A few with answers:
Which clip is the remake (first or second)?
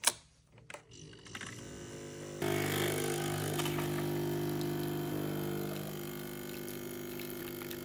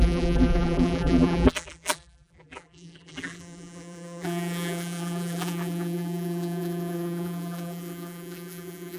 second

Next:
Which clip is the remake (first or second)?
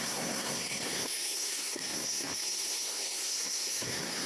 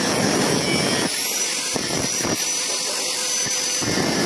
first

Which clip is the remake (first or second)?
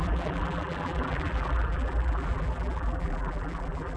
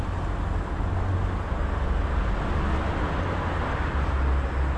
first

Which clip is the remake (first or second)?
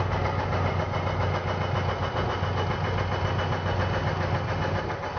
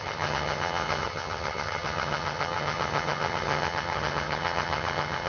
second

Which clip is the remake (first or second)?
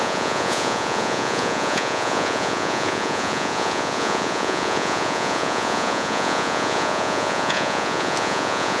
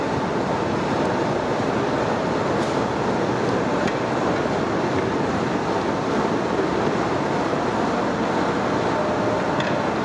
first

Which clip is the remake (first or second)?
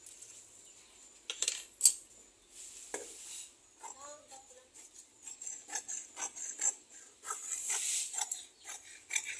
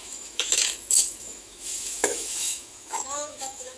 second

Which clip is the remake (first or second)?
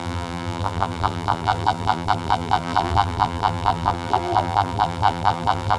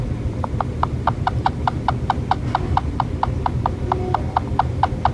first